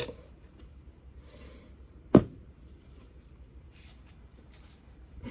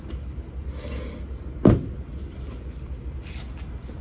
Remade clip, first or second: first